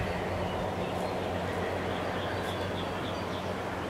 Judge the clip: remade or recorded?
recorded